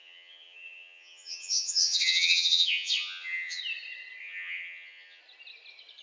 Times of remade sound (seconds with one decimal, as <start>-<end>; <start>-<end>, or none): 0.0-3.6; 4.2-5.2